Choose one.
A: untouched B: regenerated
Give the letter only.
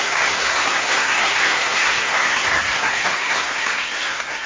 B